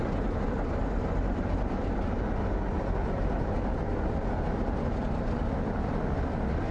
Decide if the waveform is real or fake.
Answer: real